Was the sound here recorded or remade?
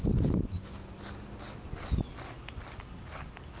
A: recorded